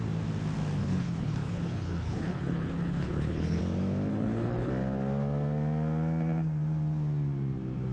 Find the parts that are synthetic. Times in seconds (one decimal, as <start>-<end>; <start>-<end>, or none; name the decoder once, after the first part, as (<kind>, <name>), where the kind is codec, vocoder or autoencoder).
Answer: 0.8-3.6 (codec, HILCodec); 4.1-4.7